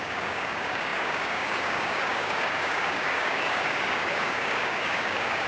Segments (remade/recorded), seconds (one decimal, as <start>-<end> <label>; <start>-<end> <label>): 0.0-5.5 remade